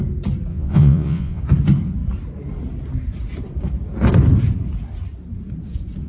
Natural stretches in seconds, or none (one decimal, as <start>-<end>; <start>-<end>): 0.0-0.5; 1.4-6.1

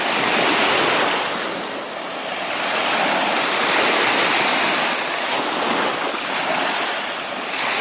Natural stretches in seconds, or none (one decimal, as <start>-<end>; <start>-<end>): 0.0-7.8

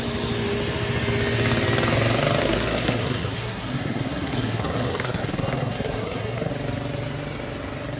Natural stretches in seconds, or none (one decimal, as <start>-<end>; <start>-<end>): 0.0-2.4; 6.5-8.0

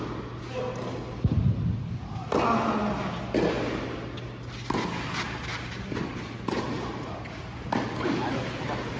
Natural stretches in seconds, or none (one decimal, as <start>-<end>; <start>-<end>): 0.0-5.5; 6.6-9.0